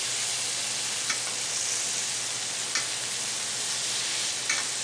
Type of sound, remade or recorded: recorded